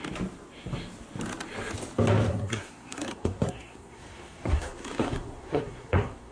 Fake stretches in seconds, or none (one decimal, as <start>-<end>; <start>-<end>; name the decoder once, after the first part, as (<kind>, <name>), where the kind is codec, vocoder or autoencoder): 2.3-6.3 (codec, SNAC)